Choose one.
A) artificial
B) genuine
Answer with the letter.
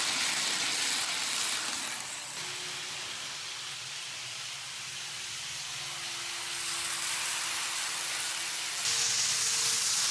B